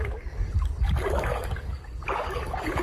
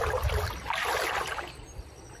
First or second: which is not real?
first